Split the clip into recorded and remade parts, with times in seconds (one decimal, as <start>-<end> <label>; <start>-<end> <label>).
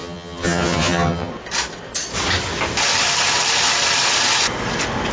0.0-1.3 remade; 1.3-5.1 recorded